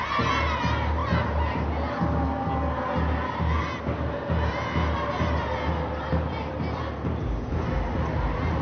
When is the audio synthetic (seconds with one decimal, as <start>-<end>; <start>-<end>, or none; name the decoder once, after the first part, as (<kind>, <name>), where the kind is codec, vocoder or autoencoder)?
none